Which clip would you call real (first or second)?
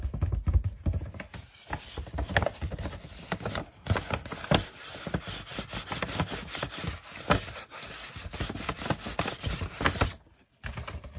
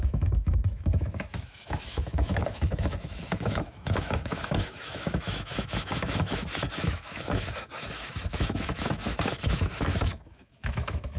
first